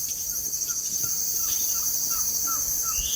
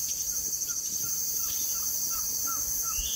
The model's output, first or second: second